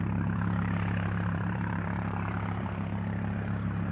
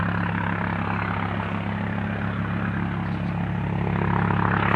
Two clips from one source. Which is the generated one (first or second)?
first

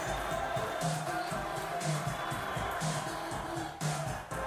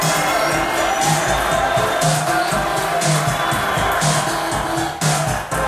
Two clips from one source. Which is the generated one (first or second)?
first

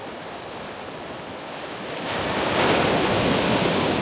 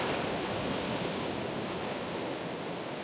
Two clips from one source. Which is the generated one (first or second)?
first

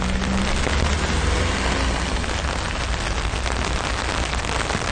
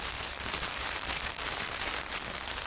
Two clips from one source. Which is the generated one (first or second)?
second